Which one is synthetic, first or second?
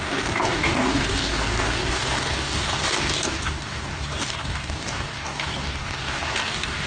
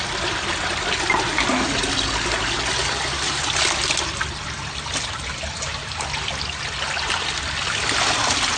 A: first